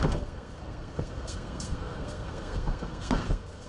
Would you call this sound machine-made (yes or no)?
yes